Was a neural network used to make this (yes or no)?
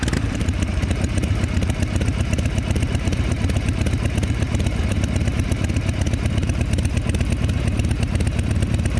yes